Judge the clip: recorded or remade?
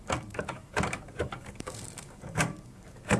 remade